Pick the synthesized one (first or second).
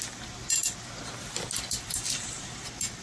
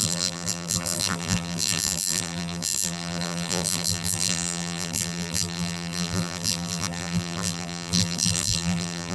second